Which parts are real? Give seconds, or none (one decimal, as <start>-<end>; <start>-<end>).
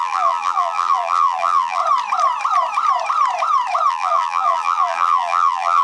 1.8-3.9